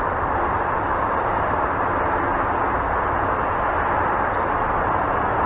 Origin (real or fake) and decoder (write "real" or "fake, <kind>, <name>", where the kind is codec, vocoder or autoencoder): real